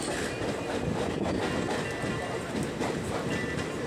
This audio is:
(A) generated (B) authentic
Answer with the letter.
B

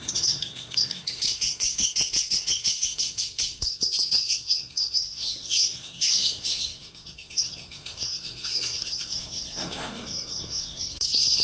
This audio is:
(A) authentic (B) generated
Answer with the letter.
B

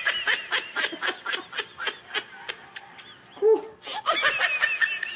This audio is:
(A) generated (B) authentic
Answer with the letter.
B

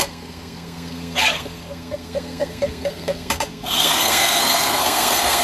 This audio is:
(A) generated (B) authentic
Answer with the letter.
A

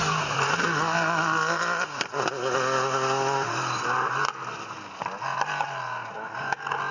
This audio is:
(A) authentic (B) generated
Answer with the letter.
A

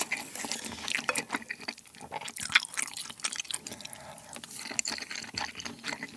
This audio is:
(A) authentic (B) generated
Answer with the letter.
A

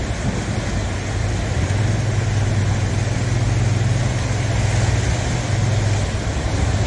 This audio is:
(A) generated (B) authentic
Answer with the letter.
B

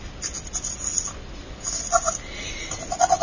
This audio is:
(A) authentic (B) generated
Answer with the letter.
A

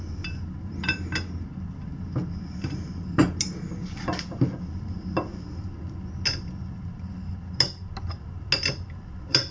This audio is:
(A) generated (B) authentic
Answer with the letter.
B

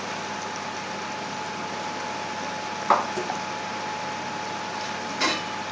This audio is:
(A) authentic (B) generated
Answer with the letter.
A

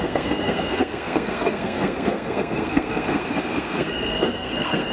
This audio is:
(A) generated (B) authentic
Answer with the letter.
A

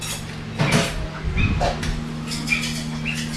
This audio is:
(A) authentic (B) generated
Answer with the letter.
A